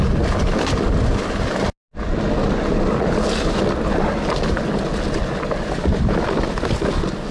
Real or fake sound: real